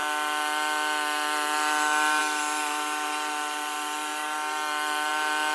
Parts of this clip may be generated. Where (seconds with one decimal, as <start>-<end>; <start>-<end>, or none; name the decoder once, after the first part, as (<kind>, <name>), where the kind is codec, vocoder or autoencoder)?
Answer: none